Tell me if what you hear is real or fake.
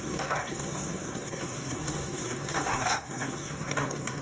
fake